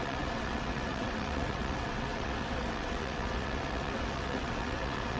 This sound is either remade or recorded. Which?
remade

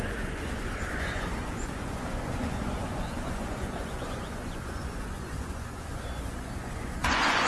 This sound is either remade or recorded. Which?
remade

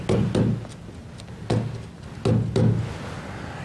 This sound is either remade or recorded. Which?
recorded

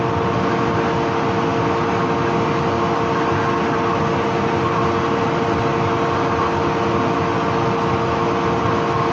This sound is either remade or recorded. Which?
recorded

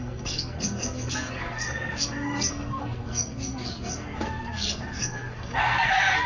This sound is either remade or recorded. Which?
remade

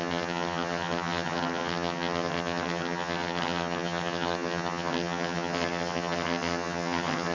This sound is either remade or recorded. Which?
remade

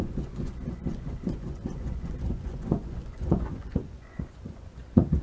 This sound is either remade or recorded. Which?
remade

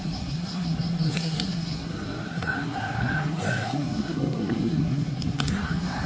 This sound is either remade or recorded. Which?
remade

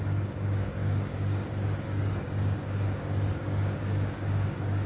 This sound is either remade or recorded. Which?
remade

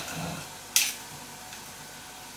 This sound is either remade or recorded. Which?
recorded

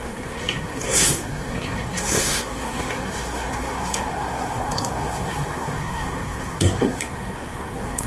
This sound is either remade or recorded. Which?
remade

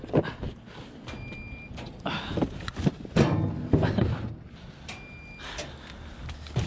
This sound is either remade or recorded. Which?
recorded